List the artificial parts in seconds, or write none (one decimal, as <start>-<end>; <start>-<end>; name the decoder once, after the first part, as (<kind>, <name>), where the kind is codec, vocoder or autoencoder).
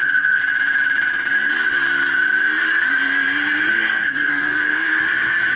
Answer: 0.0-0.4 (codec, SNAC); 3.7-5.0